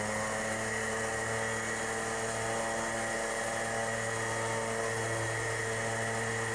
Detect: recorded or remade recorded